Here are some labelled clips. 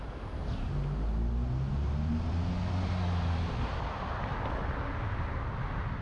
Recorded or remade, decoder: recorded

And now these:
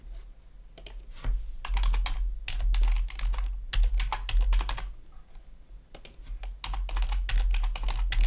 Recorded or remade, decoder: recorded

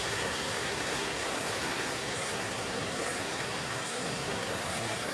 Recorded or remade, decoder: remade, codec, SNAC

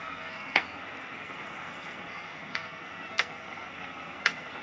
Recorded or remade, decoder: remade, codec, SNAC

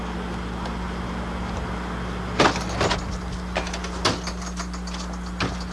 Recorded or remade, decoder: recorded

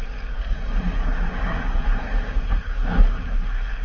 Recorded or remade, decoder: remade, codec, SNAC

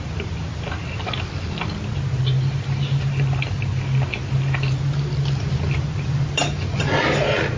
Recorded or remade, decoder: recorded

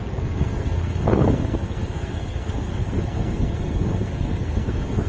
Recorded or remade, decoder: remade, codec, SNAC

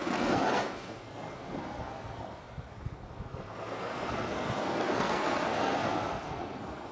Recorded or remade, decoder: remade, codec, SNAC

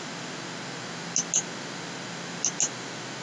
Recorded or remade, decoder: recorded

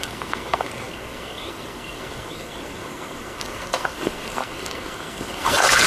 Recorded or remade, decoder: remade, codec, SNAC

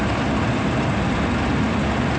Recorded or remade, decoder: recorded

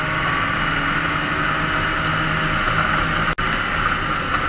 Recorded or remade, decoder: recorded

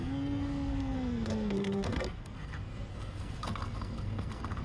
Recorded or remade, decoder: remade, codec, SNAC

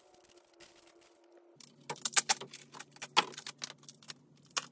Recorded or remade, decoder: recorded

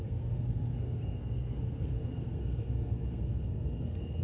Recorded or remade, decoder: remade, codec, SNAC